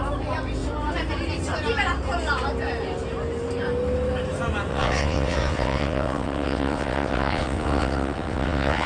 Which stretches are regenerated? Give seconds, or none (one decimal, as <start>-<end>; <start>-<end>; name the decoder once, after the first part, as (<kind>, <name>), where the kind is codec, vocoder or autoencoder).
4.7-8.9 (vocoder, WaveNeXt)